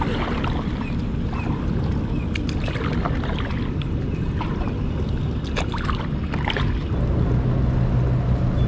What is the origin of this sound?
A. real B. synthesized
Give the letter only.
A